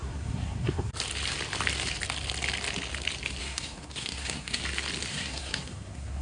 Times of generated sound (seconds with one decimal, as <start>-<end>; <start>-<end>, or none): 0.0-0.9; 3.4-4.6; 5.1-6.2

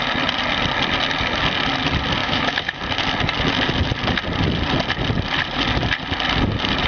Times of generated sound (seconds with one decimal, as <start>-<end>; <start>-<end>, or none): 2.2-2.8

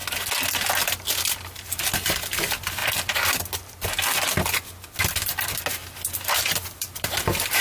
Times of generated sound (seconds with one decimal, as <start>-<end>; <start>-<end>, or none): 2.8-4.5; 5.8-7.6

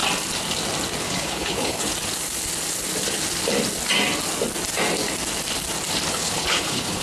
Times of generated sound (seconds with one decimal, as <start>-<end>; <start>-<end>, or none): 1.0-1.9; 6.1-7.0